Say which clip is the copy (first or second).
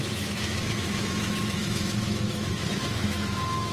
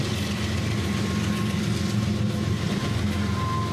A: first